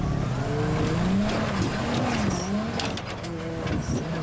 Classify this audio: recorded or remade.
recorded